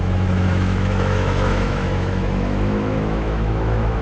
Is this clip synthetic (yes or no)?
yes